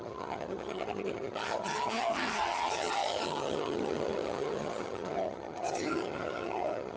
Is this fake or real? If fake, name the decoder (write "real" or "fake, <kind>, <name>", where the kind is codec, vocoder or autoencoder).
fake, vocoder, HiFi-GAN